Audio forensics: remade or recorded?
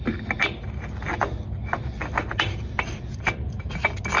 recorded